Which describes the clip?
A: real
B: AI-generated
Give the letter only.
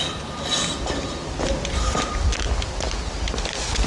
A